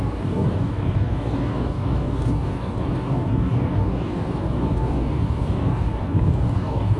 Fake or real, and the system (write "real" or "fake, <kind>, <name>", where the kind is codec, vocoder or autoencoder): fake, codec, DAC